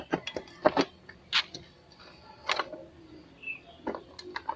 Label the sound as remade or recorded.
recorded